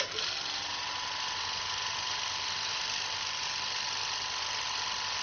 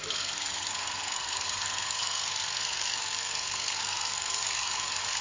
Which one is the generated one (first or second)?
second